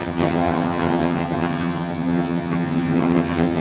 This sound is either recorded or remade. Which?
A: remade